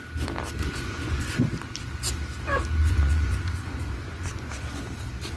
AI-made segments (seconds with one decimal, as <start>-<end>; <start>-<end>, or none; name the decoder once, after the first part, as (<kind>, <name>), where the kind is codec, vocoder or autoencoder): 0.6-1.4 (vocoder, Vocos); 2.8-4.8